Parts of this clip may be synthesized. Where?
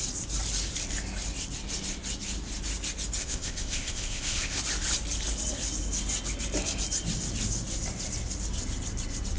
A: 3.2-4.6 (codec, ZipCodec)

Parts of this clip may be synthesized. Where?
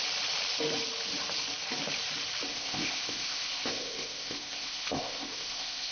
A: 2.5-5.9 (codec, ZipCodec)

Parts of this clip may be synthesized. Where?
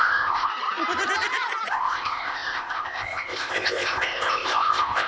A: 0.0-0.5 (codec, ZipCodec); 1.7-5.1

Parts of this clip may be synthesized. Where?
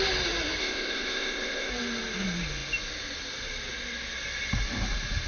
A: 0.6-1.7 (codec, ZipCodec)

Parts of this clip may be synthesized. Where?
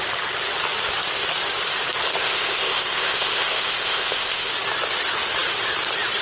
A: 2.2-4.5 (codec, ZipCodec)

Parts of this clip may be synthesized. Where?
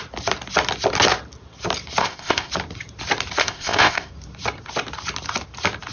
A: 2.0-2.5 (codec, ZipCodec); 3.4-4.1